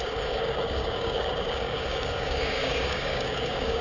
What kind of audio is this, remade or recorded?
remade